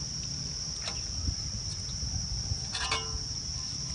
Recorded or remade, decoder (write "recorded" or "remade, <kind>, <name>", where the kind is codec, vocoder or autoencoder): recorded